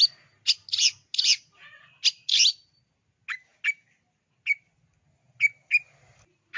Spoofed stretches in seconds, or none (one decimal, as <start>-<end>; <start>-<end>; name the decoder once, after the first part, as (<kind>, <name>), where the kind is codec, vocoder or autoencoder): none